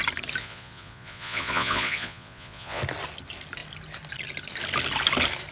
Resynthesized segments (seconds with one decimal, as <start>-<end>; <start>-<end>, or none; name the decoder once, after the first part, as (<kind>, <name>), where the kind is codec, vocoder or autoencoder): 0.4-2.8 (vocoder, Vocos)

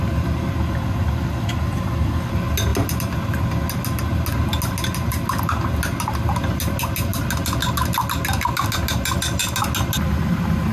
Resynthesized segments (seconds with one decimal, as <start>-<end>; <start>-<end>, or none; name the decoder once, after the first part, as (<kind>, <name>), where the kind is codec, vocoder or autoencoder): none

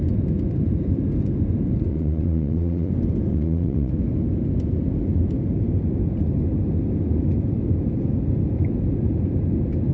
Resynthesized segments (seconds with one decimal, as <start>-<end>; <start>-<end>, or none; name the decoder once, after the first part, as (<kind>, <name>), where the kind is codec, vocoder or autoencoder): 1.9-2.9 (vocoder, Vocos); 3.3-3.9

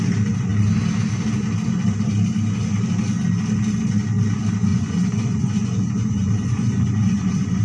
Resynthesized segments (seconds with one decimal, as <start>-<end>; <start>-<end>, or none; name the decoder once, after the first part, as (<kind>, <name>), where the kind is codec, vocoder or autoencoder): 4.7-7.6 (vocoder, Vocos)